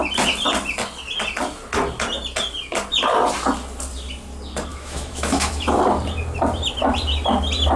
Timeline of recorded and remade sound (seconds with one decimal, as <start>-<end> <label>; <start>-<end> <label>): 0.0-4.7 recorded; 4.7-5.8 remade; 5.8-7.8 recorded